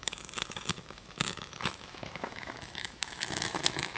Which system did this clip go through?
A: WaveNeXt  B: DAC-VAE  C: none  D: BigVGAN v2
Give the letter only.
B